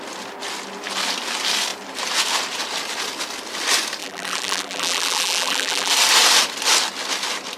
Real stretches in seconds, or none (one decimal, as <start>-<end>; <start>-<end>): 0.0-4.0; 5.9-7.6